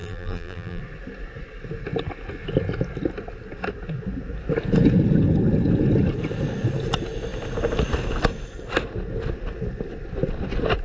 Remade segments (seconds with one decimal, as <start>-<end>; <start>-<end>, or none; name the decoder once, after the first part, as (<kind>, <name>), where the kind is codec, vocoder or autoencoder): 0.0-0.8 (vocoder, BigVGAN v2)